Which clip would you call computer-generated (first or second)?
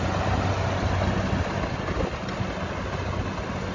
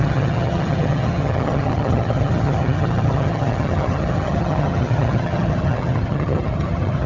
second